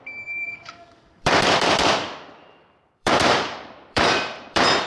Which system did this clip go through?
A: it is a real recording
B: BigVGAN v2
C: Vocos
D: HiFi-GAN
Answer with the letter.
B